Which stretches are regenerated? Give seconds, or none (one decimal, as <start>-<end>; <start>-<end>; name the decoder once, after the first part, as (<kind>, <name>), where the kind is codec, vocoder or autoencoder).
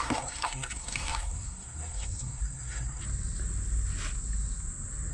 0.0-3.0 (codec, SNAC)